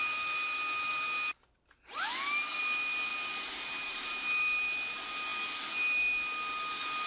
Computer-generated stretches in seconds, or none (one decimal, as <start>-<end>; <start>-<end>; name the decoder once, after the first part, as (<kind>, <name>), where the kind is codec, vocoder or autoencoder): none